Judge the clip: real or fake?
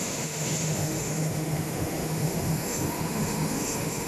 fake